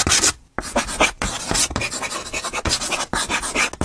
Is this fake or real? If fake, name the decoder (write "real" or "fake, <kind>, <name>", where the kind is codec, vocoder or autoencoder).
real